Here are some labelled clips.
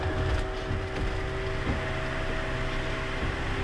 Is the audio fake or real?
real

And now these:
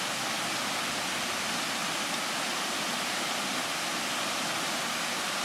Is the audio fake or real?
real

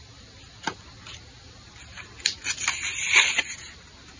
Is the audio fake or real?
real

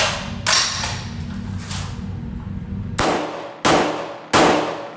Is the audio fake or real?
real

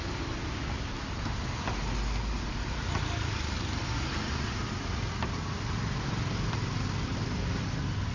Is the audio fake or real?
real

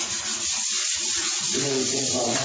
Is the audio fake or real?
fake